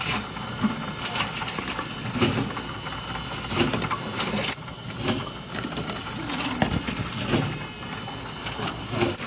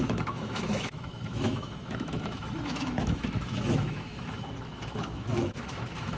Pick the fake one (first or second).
second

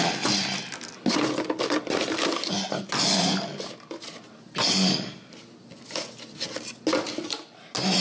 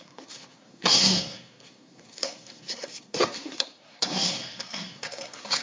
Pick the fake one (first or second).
second